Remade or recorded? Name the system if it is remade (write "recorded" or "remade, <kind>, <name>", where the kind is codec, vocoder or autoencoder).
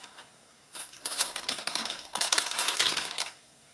remade, codec, SNAC